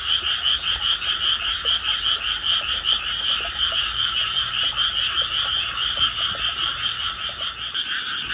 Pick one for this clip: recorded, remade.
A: recorded